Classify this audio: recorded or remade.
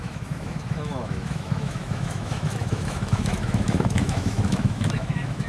remade